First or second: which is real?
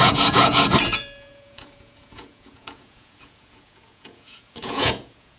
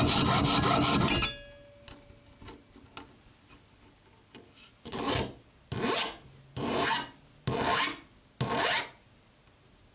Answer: second